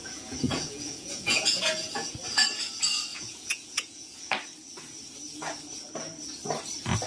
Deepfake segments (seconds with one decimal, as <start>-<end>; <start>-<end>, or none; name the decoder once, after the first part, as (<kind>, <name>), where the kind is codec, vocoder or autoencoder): 0.0-2.1 (vocoder, Vocos); 3.1-4.3